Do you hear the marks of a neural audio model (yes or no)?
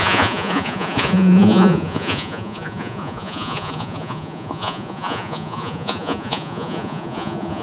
yes